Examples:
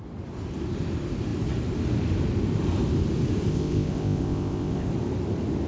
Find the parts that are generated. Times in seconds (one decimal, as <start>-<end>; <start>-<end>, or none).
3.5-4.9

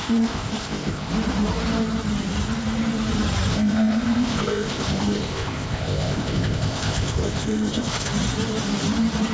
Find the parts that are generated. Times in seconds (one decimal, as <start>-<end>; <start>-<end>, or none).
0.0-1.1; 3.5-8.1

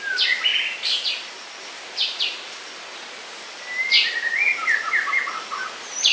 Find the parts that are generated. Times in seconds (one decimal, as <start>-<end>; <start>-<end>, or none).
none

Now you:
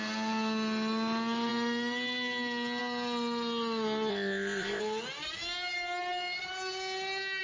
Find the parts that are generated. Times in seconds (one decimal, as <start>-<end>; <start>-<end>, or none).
4.1-4.8

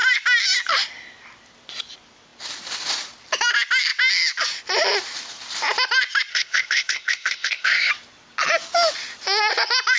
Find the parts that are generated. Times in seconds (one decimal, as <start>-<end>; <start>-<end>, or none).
6.3-7.9

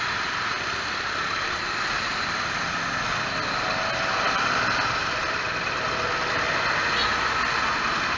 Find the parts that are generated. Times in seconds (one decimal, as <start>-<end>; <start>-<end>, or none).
none